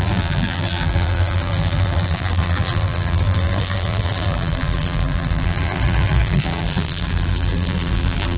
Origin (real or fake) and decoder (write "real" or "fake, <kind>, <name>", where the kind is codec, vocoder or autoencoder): fake, vocoder, BigVGAN v2